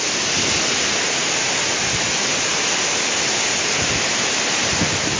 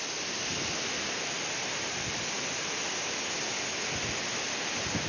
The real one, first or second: second